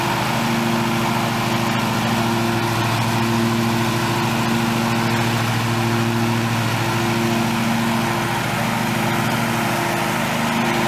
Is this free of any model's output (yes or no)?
yes